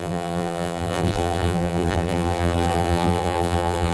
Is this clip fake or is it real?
fake